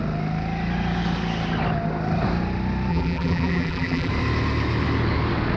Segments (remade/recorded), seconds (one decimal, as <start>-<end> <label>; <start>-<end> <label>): 0.0-2.9 recorded; 2.9-4.1 remade; 4.1-5.6 recorded